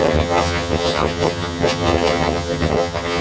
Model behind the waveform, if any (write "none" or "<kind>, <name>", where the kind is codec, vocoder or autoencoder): vocoder, HiFi-GAN